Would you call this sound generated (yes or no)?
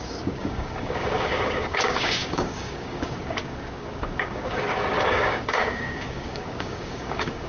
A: yes